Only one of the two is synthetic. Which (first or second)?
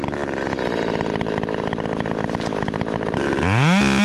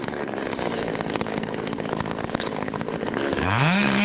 second